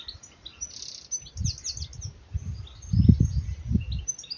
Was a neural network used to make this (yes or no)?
no